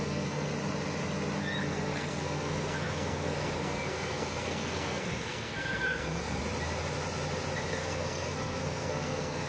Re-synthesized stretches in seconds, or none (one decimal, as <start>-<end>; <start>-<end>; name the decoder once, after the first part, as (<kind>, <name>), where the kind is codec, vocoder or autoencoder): 0.0-0.5 (codec, SNAC); 1.6-6.4; 7.7-9.5